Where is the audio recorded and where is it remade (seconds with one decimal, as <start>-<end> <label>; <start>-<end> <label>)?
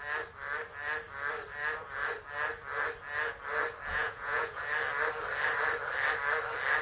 0.0-3.9 recorded; 3.9-4.6 remade; 4.6-6.8 recorded